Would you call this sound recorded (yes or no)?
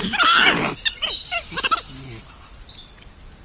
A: yes